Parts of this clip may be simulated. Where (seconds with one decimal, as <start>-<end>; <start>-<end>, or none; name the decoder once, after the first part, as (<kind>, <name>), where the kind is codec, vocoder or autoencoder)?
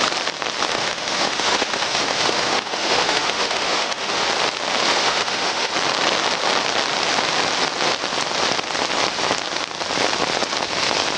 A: 0.7-4.3 (autoencoder, DAC-VAE); 4.9-5.7